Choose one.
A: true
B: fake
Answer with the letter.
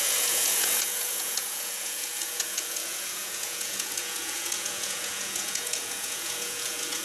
B